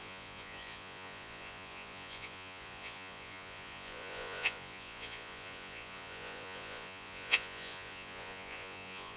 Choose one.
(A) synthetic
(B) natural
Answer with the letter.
A